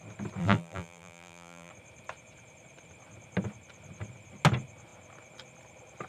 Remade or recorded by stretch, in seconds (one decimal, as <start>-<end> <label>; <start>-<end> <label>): 0.0-0.4 recorded; 0.4-1.7 remade; 1.7-6.1 recorded